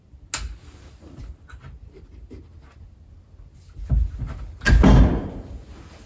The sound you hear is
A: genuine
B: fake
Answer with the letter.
A